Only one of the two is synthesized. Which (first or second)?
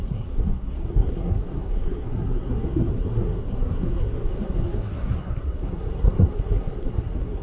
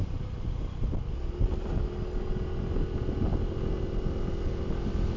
first